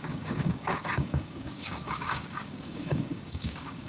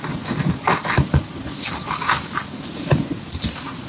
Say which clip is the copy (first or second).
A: first